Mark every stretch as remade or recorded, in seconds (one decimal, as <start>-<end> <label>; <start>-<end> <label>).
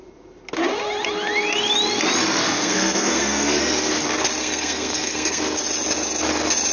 0.0-2.4 recorded; 2.4-3.6 remade; 3.6-4.4 recorded; 4.4-5.4 remade; 5.4-6.7 recorded